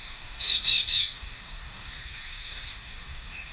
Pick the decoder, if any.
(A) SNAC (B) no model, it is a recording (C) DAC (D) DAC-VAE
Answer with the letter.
C